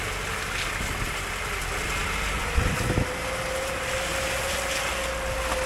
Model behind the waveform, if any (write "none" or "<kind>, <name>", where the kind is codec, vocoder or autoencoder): none